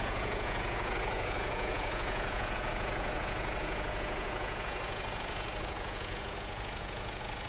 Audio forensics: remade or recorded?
remade